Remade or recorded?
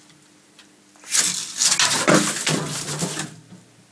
recorded